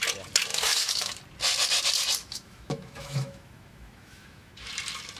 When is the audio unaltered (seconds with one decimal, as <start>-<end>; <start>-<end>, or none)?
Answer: 0.0-0.5; 1.2-2.2; 4.5-5.2